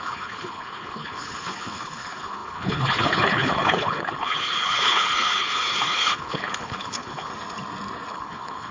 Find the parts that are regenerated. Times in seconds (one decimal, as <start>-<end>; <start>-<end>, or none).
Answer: 0.0-7.3; 8.1-8.7